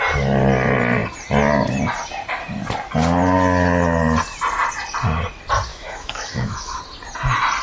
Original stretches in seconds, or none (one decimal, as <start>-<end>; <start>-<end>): 0.0-5.7; 6.8-7.6